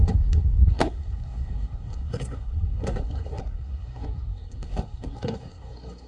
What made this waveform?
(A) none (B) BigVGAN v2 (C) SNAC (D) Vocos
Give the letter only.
C